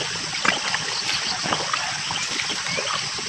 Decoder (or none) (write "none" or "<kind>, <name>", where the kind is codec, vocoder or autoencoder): none